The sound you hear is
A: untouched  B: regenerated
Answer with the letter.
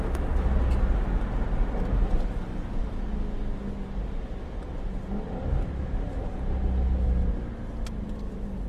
A